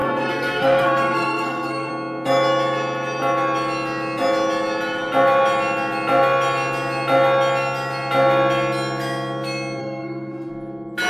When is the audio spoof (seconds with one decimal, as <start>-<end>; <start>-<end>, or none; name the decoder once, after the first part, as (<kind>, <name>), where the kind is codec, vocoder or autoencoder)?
0.0-1.9 (codec, SNAC); 9.8-10.5